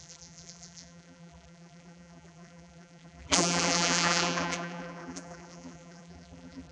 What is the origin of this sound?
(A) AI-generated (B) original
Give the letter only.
A